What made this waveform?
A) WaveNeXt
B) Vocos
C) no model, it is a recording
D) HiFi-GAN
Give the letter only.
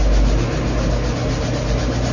C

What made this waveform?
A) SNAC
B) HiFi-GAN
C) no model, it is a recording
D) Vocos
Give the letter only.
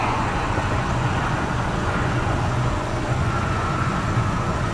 D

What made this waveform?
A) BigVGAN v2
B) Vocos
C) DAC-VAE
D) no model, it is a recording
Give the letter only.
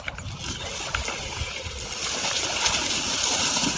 D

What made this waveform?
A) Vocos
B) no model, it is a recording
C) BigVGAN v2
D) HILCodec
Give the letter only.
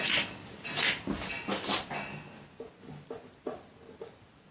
B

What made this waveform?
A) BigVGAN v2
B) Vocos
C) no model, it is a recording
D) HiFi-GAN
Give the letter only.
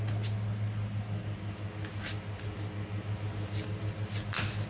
C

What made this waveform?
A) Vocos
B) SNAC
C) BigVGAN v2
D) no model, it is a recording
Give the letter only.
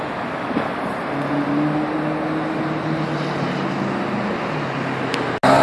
D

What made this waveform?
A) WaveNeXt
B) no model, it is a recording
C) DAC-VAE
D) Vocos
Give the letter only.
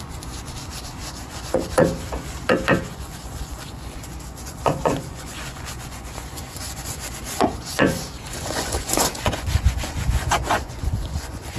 D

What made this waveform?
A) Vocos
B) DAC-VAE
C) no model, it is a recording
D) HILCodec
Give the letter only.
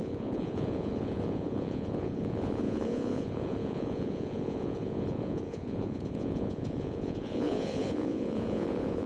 A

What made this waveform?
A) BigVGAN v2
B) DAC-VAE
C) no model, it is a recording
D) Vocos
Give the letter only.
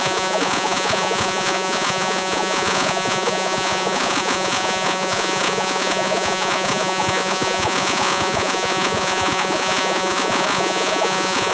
D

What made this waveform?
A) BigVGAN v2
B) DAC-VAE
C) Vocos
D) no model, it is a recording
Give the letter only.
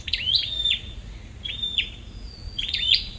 C